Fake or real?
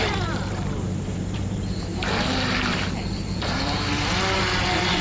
fake